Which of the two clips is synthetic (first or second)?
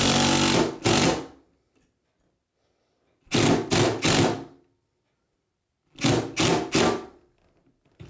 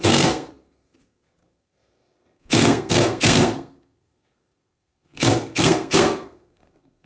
second